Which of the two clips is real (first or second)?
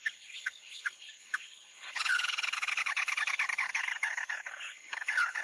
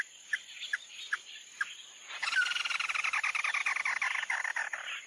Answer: second